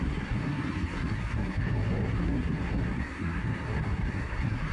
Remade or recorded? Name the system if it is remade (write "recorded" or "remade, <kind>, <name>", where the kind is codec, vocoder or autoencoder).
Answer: remade, codec, SNAC